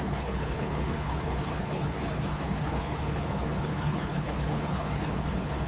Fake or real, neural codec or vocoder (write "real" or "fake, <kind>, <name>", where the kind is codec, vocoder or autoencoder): fake, codec, HILCodec